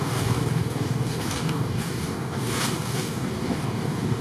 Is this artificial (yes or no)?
yes